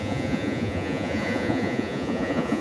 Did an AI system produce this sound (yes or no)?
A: yes